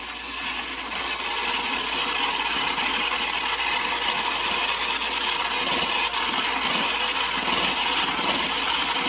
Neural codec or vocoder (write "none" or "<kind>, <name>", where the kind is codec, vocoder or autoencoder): none